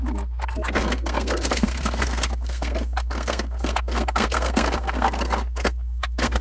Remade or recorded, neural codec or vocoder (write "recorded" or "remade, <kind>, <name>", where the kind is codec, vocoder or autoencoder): remade, codec, SNAC